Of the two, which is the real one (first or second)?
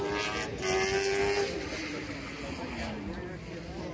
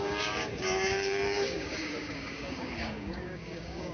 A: first